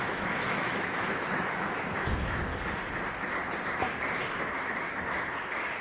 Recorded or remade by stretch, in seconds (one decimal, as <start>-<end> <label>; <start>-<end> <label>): 0.0-2.5 remade; 2.5-4.4 recorded; 4.4-5.8 remade